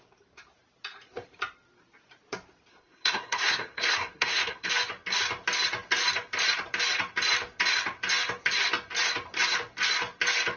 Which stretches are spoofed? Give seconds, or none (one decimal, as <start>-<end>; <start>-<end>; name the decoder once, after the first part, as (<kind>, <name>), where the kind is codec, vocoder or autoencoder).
2.7-4.7 (codec, SNAC)